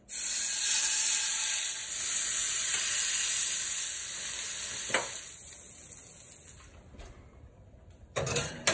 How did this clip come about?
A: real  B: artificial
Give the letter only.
A